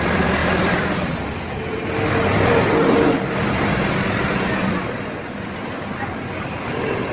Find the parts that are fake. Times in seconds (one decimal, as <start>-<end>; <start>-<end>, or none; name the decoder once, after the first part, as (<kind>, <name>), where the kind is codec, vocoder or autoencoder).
none